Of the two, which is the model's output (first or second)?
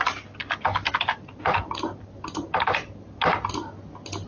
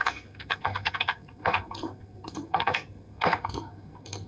second